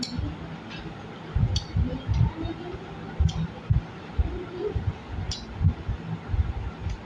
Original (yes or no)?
yes